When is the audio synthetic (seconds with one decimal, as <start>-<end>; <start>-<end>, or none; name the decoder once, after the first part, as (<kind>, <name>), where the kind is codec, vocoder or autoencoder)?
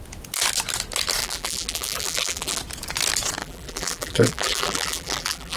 1.2-2.6 (vocoder, BigVGAN v2); 3.4-5.6